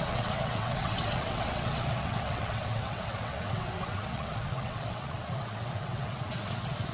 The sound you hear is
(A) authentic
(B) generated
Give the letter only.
B